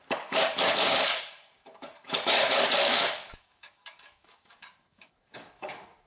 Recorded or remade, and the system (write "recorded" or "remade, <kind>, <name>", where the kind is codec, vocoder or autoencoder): remade, codec, DAC